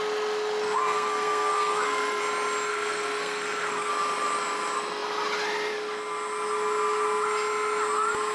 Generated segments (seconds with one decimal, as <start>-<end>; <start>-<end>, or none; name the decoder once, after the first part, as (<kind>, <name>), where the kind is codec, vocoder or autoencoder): 0.8-2.2 (codec, SNAC); 2.7-3.9